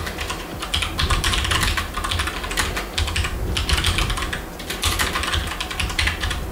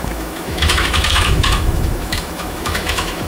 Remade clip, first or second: second